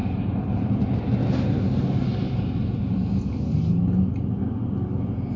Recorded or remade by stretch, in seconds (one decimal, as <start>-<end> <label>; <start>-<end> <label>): 0.0-5.4 recorded